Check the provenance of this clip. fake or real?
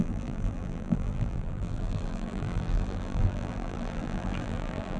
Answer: fake